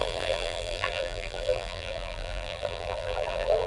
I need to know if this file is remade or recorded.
remade